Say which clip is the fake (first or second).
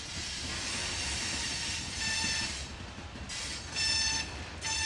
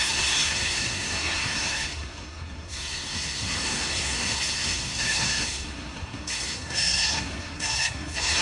second